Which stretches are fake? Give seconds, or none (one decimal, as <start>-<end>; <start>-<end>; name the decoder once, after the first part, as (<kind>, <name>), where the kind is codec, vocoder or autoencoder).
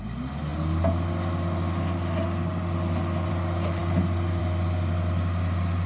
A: none